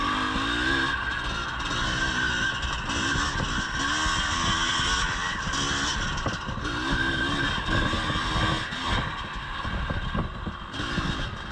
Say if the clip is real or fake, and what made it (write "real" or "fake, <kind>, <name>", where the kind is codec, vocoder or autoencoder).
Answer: real